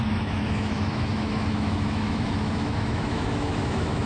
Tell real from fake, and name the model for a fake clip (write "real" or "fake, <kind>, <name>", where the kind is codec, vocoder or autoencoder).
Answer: fake, autoencoder, DAC-VAE